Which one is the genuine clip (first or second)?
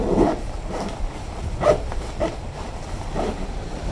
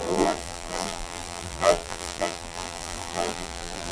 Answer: first